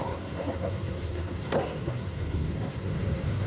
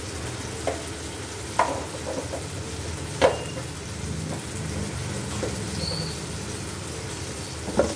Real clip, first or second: second